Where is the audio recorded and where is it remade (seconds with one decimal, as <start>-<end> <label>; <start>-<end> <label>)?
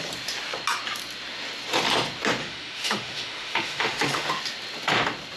0.0-2.4 recorded; 2.4-4.4 remade; 4.4-5.4 recorded